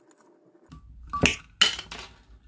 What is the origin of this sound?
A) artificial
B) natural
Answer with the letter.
B